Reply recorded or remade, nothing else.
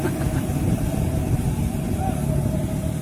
recorded